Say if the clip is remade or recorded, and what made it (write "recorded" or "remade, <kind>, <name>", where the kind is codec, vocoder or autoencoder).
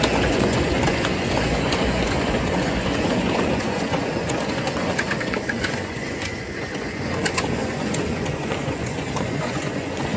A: remade, vocoder, Vocos